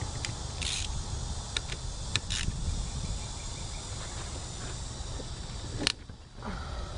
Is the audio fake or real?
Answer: real